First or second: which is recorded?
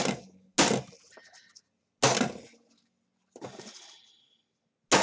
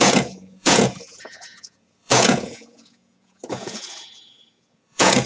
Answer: first